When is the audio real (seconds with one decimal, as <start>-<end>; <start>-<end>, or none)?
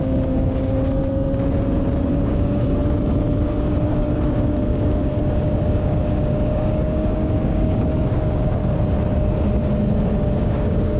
0.8-2.1; 2.8-3.5; 8.6-10.4